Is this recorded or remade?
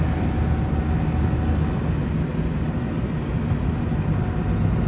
recorded